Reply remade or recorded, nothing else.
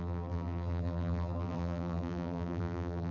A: remade